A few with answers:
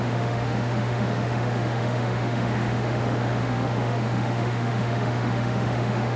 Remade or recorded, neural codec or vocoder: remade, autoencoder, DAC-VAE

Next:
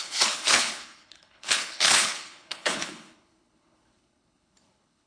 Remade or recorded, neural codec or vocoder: remade, codec, HILCodec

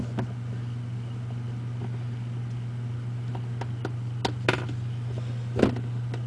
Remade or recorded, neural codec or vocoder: recorded